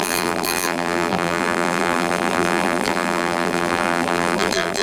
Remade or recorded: remade